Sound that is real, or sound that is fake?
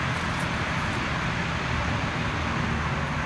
real